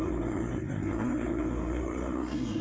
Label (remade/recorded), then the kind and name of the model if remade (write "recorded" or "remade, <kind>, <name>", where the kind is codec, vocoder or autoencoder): remade, codec, SNAC